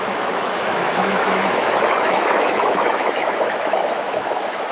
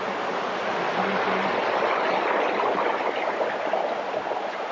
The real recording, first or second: second